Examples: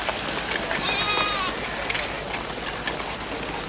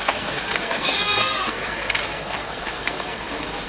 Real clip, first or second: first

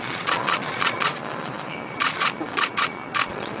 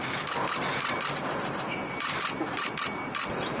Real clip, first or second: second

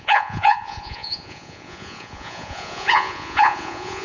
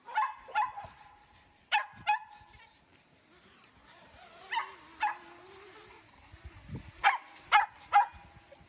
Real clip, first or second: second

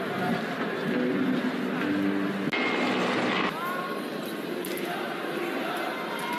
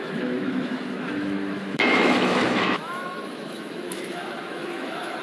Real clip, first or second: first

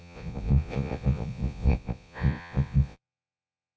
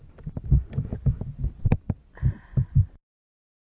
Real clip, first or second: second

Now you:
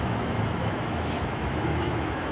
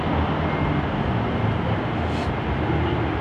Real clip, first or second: second